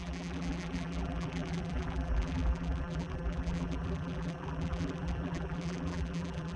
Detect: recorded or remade remade